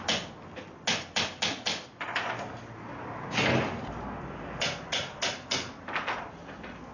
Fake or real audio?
real